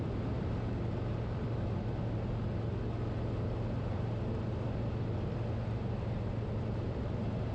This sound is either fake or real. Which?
real